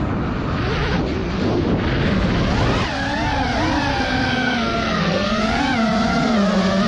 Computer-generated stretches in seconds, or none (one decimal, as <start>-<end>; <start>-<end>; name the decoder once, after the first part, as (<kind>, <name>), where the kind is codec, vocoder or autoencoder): 3.9-5.6 (codec, SNAC)